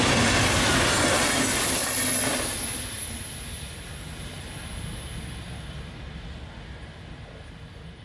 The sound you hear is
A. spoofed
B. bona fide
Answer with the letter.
B